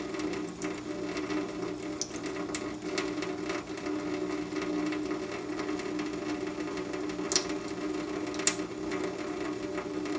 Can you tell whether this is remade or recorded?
recorded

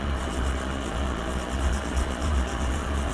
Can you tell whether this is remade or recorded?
remade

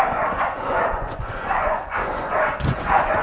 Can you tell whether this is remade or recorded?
remade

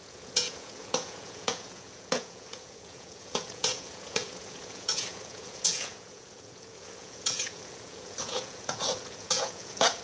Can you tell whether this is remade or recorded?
remade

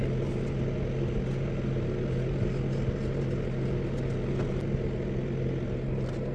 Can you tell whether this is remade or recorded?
recorded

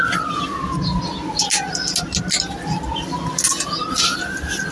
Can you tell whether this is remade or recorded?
recorded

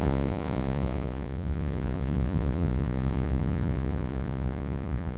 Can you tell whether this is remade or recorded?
remade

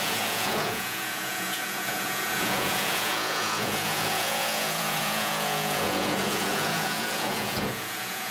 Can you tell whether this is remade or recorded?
remade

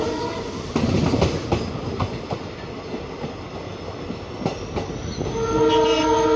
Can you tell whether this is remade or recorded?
recorded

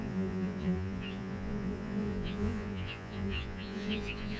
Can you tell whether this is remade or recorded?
remade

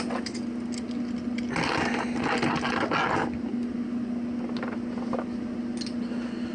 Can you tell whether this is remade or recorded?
recorded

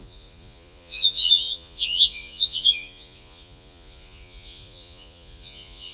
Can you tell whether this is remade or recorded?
remade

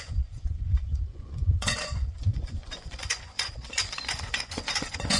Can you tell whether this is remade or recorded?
remade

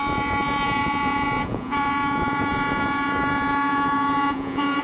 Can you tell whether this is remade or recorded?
remade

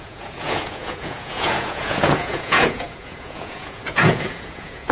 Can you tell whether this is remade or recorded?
remade